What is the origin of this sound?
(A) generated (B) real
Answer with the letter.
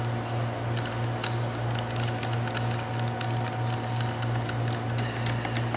B